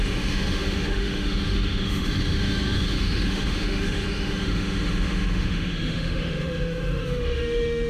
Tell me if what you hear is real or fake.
fake